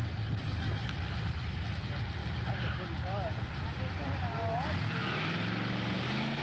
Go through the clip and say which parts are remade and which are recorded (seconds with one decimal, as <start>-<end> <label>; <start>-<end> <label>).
0.0-6.4 recorded